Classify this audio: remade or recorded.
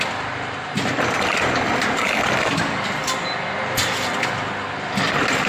recorded